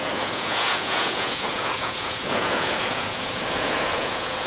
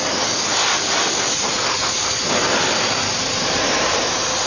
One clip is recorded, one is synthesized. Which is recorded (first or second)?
second